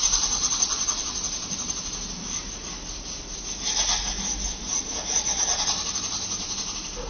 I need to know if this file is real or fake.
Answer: real